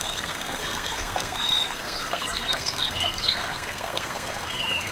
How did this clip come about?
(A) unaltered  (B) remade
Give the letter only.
B